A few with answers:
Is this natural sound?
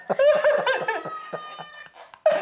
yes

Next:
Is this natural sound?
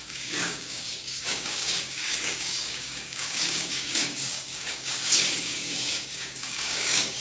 no